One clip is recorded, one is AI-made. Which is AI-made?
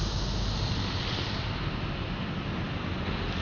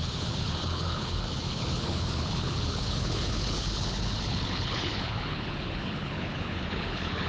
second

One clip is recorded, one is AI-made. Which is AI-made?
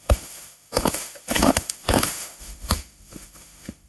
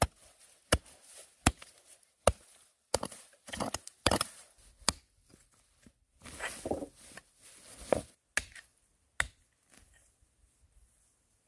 first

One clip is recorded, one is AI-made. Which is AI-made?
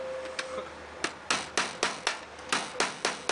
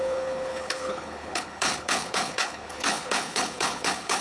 second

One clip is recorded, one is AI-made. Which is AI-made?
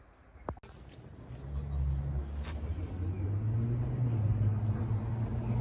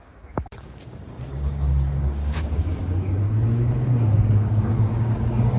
second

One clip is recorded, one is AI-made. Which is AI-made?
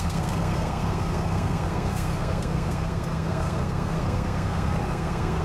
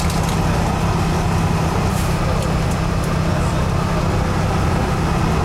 first